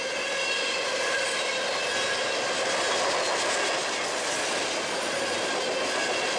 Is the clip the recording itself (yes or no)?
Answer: yes